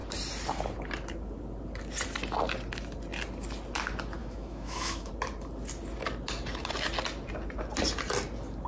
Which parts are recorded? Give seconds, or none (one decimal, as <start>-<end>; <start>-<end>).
0.0-4.2; 5.1-8.7